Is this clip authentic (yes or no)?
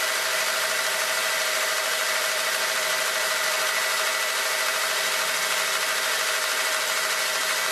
yes